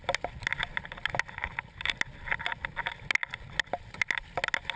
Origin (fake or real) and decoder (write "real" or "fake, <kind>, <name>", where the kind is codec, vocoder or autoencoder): real